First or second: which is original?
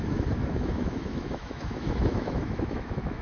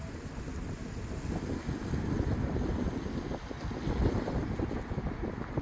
second